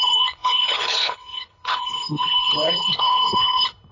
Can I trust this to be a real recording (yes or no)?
no